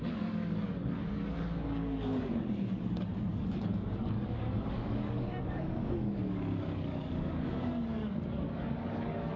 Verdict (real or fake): fake